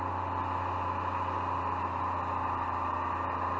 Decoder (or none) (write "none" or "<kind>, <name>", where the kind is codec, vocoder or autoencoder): none